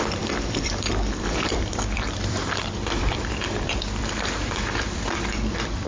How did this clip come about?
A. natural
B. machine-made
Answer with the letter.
B